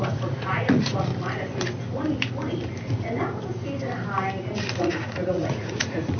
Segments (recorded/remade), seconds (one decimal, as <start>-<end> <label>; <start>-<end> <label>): 0.0-1.1 remade; 1.1-4.8 recorded; 4.8-6.2 remade